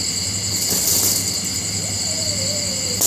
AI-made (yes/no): no